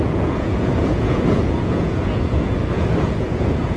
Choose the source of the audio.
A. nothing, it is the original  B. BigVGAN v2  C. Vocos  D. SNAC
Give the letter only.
C